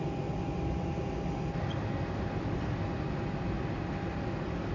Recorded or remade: recorded